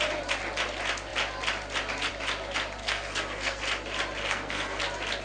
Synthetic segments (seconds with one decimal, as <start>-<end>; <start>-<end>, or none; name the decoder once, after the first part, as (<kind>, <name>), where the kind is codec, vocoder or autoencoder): 2.8-3.6 (codec, SNAC); 4.2-4.8